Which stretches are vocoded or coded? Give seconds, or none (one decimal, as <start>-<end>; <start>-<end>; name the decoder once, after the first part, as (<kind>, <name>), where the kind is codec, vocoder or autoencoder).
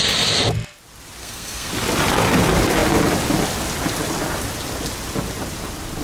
1.2-1.7 (codec, SNAC)